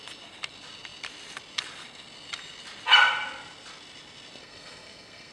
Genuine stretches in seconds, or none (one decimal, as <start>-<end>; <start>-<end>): 0.0-4.4